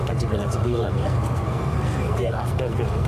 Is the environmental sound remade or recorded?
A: remade